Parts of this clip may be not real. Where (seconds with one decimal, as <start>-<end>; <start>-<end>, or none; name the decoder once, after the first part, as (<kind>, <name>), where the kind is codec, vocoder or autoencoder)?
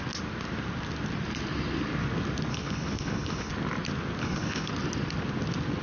2.5-3.5 (codec, HILCodec); 4.2-4.7